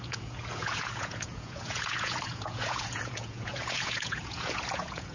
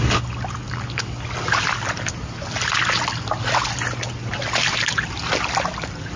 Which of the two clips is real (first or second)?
second